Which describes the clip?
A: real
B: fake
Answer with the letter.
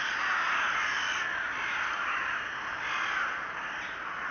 A